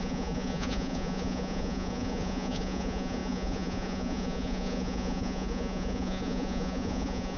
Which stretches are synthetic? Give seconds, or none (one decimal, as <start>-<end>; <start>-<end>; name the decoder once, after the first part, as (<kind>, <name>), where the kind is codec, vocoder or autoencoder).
0.0-7.4 (vocoder, Vocos)